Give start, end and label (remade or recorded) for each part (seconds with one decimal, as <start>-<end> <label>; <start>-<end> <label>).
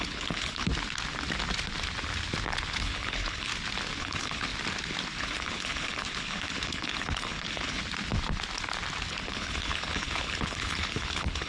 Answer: 0.0-0.7 remade; 0.7-2.7 recorded; 2.7-3.5 remade; 3.5-4.0 recorded; 4.0-4.5 remade; 4.5-5.2 recorded; 5.2-7.8 remade; 7.8-9.1 recorded; 9.1-11.5 remade